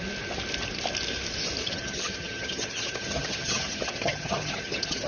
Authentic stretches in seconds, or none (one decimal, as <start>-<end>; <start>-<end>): 0.0-1.6